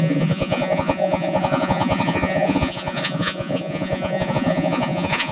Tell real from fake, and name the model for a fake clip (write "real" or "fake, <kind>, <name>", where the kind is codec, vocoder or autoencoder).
fake, vocoder, Vocos